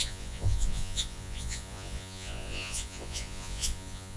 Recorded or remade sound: remade